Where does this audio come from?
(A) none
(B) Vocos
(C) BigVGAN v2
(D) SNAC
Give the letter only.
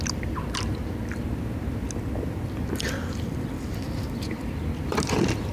A